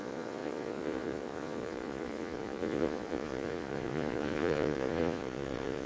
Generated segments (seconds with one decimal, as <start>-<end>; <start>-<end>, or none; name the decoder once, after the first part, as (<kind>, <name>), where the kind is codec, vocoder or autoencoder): 0.0-5.9 (vocoder, Vocos)